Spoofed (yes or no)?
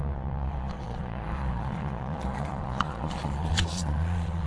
yes